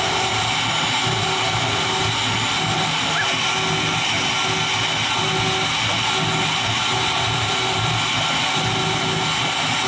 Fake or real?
real